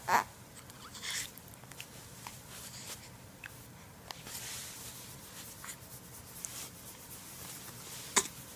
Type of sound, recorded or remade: recorded